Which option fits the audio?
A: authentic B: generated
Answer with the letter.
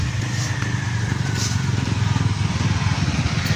A